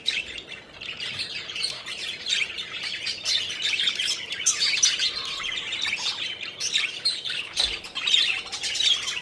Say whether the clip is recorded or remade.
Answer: remade